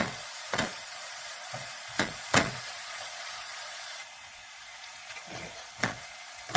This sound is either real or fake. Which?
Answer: fake